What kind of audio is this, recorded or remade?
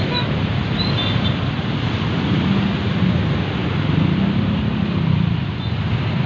recorded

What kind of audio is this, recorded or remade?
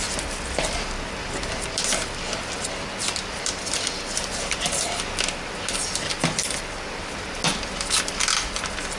recorded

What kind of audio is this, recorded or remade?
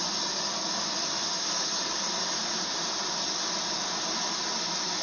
recorded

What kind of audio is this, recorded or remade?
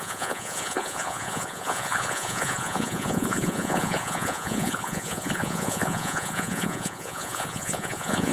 remade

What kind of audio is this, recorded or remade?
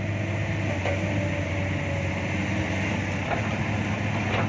recorded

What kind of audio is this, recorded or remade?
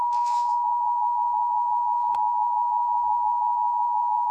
remade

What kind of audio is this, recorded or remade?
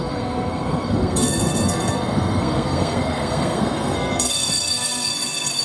remade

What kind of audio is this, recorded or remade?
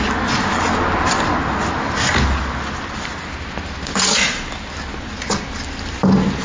recorded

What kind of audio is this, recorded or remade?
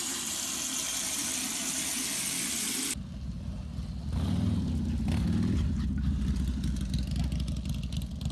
recorded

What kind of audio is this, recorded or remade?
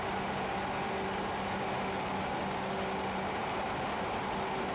recorded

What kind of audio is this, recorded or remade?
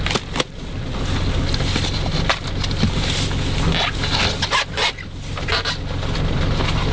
recorded